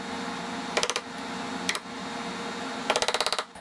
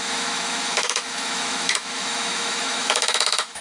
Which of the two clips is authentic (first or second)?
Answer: first